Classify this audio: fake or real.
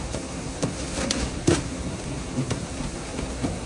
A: fake